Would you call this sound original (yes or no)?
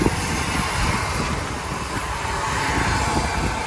yes